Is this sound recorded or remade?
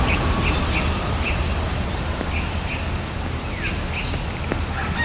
recorded